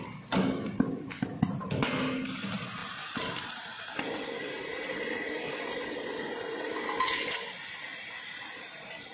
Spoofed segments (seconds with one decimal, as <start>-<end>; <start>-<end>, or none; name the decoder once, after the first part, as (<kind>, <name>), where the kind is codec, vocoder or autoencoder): none